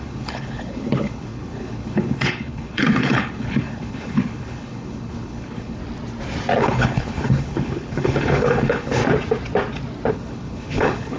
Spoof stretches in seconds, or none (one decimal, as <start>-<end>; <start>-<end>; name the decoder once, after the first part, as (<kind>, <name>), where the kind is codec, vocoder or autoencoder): 0.0-5.8 (codec, HILCodec); 6.6-9.0; 10.1-11.2